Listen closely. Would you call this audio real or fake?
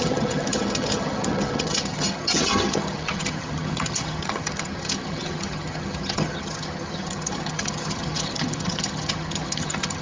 fake